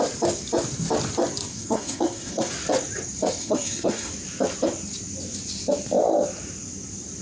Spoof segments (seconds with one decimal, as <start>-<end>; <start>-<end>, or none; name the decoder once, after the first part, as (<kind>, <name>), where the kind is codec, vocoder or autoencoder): 1.5-2.5 (codec, SNAC); 3.4-4.1

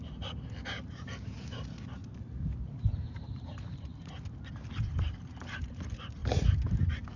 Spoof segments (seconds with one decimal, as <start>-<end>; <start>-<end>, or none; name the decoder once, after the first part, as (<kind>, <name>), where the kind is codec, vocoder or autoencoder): 0.0-2.0 (vocoder, BigVGAN v2); 2.7-3.9; 4.5-6.2

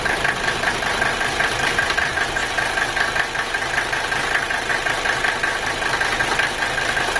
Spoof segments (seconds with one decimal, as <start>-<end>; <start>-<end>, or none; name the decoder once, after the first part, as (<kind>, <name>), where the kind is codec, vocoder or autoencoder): none

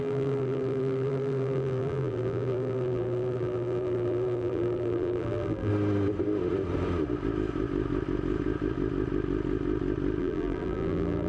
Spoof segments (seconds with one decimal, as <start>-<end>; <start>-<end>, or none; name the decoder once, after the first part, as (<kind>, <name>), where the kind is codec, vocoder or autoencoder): 0.0-5.7 (vocoder, BigVGAN v2); 10.2-11.3

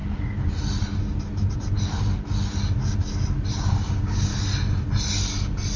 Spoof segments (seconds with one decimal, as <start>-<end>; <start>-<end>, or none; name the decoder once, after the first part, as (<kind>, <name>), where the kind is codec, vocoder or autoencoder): 3.5-4.3 (codec, DAC)

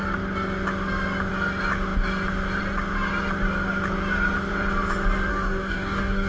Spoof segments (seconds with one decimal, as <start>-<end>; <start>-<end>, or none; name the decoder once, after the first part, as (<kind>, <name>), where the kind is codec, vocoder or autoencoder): 5.3-6.3 (codec, DAC)